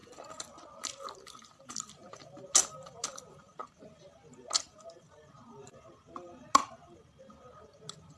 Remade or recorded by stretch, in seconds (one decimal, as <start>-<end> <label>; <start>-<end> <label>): 0.0-8.2 recorded

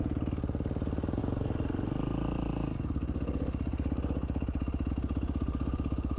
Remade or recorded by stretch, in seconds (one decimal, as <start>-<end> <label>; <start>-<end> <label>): 0.0-6.2 recorded